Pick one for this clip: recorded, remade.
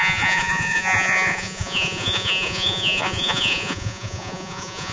remade